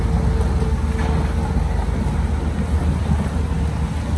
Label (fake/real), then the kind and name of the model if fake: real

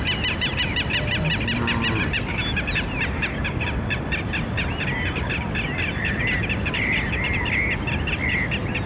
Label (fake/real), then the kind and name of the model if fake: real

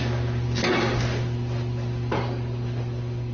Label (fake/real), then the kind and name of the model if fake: real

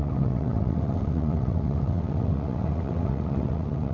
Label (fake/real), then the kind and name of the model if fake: fake, vocoder, WaveNeXt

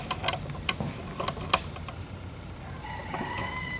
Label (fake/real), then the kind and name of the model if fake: real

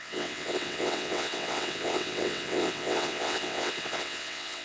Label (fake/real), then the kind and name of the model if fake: fake, vocoder, WaveNeXt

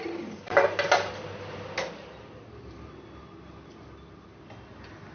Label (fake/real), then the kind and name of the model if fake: real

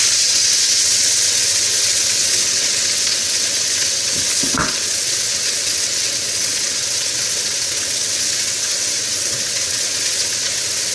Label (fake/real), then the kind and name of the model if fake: fake, vocoder, WaveNeXt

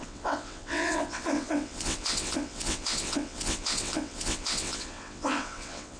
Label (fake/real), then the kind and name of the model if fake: fake, vocoder, WaveNeXt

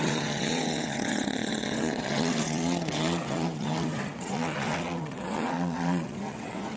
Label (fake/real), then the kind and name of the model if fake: fake, vocoder, WaveNeXt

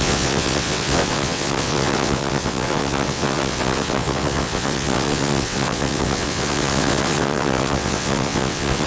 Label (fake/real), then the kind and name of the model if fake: fake, vocoder, WaveNeXt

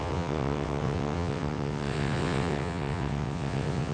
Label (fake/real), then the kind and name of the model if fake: fake, vocoder, WaveNeXt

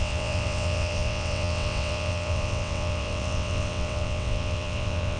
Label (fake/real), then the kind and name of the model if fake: fake, vocoder, WaveNeXt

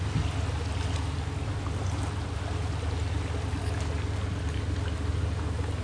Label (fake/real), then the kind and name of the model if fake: real